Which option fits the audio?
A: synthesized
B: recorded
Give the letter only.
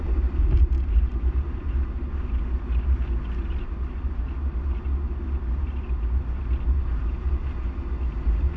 B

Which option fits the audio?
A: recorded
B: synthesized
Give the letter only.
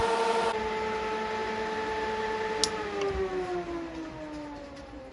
A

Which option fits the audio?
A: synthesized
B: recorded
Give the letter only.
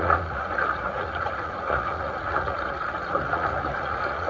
A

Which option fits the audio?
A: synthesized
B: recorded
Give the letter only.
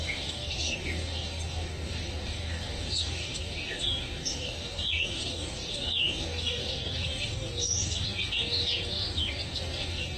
A